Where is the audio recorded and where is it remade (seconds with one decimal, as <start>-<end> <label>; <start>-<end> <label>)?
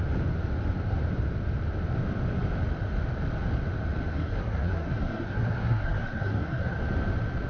0.0-4.1 recorded; 4.1-6.8 remade; 6.8-7.5 recorded